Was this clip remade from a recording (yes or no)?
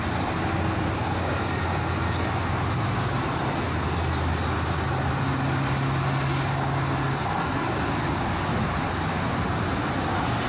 no